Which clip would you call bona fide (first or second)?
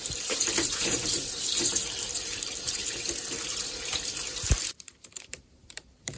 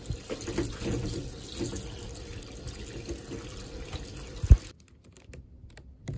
second